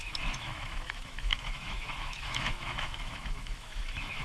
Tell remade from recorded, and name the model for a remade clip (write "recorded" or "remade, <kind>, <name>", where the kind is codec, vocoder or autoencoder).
remade, autoencoder, DAC-VAE